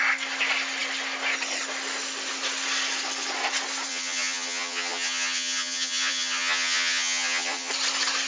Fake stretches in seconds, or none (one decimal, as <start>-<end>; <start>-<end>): 3.9-7.7